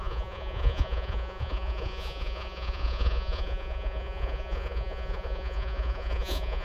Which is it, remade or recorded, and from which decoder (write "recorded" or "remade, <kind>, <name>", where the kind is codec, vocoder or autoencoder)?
remade, vocoder, Vocos